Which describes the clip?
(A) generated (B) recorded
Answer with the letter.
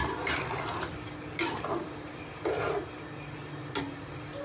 B